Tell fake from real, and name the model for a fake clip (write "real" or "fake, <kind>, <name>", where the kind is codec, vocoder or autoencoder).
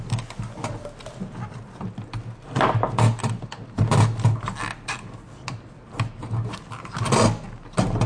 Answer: real